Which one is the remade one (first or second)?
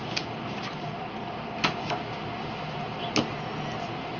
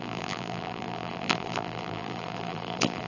second